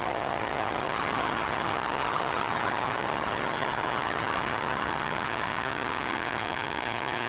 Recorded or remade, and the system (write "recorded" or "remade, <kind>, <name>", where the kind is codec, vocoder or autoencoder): remade, vocoder, HiFi-GAN